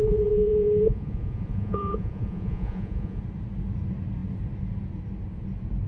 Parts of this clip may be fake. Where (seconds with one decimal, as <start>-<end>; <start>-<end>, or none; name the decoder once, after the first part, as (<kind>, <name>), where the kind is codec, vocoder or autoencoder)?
0.0-3.2 (vocoder, Vocos)